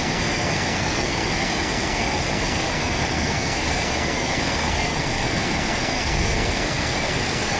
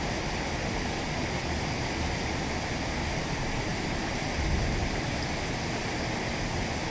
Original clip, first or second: second